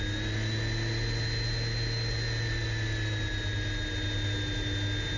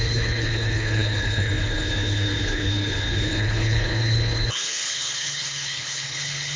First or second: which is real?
first